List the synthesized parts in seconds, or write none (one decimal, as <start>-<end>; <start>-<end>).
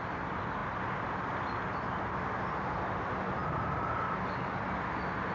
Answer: none